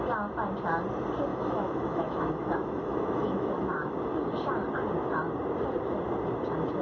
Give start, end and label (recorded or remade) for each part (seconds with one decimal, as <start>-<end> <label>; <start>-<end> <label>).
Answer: 0.0-1.3 recorded; 1.3-3.9 remade; 3.9-6.8 recorded